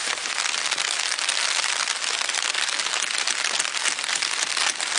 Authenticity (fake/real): real